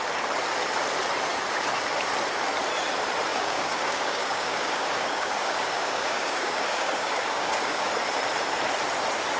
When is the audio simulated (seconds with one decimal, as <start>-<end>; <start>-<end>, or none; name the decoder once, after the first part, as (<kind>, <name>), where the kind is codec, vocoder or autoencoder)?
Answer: 3.3-7.9 (codec, DAC)